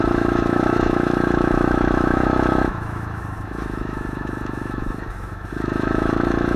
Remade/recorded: remade